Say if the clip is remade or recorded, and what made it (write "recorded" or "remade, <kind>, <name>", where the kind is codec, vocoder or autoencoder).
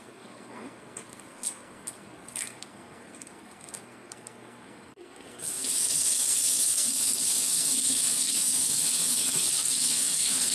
remade, codec, SNAC